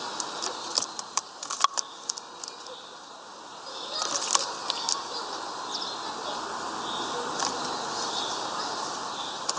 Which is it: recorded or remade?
recorded